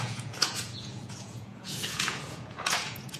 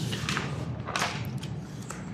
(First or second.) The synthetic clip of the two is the first